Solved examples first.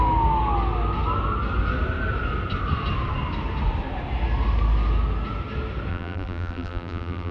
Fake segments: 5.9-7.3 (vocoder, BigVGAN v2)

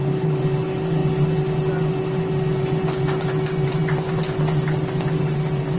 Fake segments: none

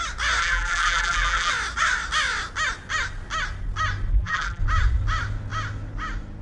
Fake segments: 0.4-1.5 (vocoder, BigVGAN v2); 4.1-4.6

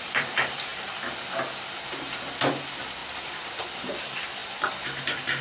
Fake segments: 0.0-0.7 (vocoder, BigVGAN v2); 2.5-4.4

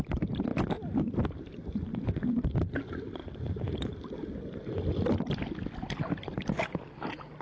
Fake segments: 0.5-2.4 (vocoder, BigVGAN v2); 3.2-5.4

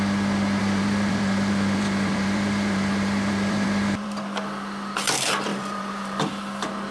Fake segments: 0.6-4.2 (vocoder, BigVGAN v2); 5.5-6.2

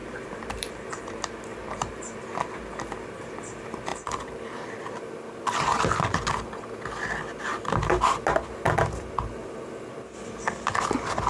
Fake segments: 0.0-0.7 (vocoder, BigVGAN v2); 1.5-2.2